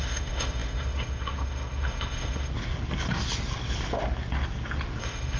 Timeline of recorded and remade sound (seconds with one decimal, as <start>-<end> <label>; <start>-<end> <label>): 0.0-2.5 remade; 2.5-5.0 recorded; 5.0-5.4 remade